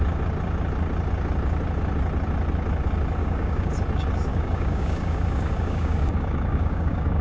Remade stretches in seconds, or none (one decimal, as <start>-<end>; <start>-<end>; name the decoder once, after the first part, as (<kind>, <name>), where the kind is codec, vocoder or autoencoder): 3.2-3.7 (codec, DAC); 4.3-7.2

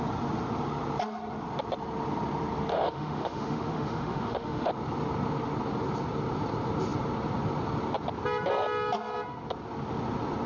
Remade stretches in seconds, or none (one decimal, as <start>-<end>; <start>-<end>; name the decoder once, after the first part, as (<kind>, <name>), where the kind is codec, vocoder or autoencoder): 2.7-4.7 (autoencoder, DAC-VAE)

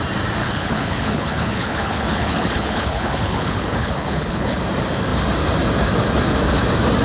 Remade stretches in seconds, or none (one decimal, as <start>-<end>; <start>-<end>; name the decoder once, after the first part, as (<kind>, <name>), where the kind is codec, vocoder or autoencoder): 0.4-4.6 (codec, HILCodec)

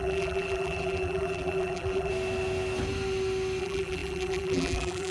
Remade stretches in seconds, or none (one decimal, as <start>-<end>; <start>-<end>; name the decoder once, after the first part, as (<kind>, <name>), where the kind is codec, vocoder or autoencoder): 0.0-2.1 (vocoder, BigVGAN v2); 3.6-5.1

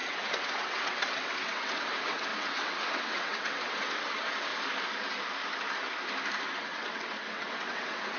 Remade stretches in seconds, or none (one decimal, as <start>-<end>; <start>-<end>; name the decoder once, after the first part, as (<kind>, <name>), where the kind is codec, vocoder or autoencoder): 0.0-4.5 (vocoder, WaveNeXt); 6.6-8.2